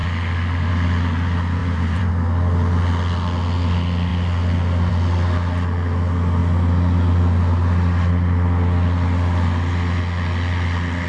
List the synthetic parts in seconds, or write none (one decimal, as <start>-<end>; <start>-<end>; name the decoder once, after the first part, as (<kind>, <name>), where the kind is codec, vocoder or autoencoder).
1.6-2.1 (vocoder, BigVGAN v2)